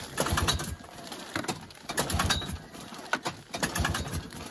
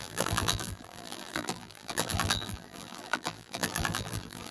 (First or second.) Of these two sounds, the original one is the first